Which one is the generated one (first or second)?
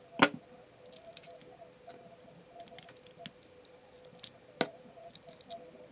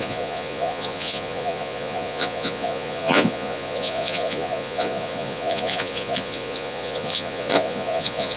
second